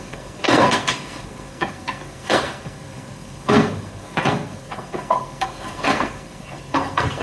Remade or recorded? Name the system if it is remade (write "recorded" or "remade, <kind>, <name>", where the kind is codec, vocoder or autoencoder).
remade, codec, SNAC